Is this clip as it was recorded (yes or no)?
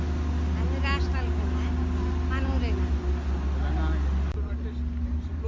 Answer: yes